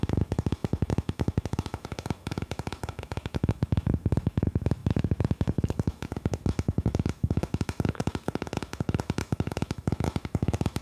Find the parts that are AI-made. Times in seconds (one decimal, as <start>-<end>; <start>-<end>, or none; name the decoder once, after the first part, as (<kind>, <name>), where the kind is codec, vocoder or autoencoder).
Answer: 0.0-10.8 (autoencoder, DAC-VAE)